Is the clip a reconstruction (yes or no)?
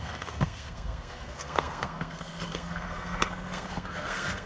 yes